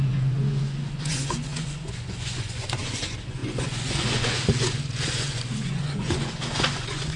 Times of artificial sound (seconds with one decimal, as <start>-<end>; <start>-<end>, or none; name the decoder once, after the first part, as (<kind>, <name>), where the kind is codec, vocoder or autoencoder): 0.0-7.2 (vocoder, Vocos)